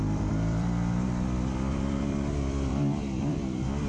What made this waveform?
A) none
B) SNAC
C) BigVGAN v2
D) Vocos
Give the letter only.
C